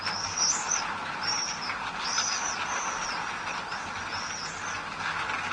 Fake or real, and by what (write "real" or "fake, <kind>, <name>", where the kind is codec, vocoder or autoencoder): real